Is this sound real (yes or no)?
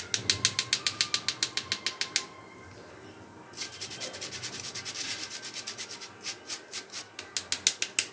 yes